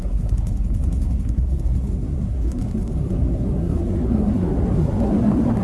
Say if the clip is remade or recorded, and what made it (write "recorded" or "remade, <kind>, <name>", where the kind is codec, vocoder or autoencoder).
remade, codec, SNAC